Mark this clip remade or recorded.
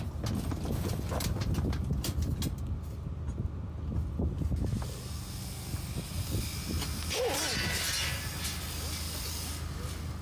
recorded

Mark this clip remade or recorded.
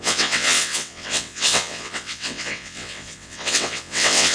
remade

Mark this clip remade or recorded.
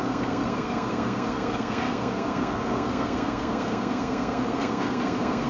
remade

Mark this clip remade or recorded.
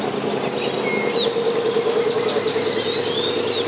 recorded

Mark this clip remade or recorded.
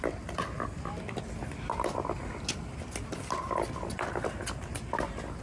recorded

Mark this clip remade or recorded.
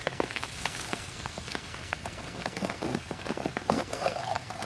remade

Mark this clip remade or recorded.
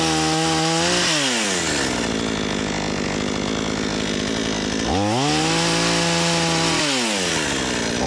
recorded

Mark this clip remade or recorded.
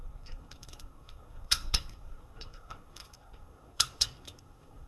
remade